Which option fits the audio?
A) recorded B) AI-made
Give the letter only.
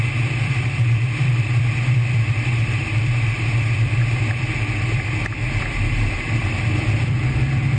B